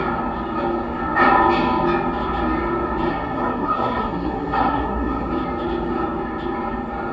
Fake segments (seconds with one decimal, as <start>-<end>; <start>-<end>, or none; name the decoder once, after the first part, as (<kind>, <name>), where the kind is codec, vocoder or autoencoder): 3.1-5.3 (codec, SNAC)